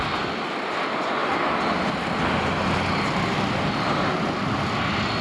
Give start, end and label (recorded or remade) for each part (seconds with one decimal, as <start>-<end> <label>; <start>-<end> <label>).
0.0-5.2 recorded

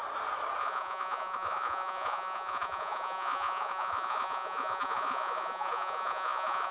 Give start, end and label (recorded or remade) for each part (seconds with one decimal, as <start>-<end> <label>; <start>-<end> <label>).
0.0-0.6 recorded; 0.6-6.7 remade

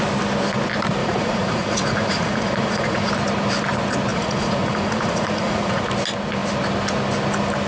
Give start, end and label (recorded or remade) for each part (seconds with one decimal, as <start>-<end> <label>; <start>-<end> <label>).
0.0-1.0 recorded; 1.0-3.1 remade; 3.1-4.1 recorded; 4.1-5.8 remade; 5.8-7.7 recorded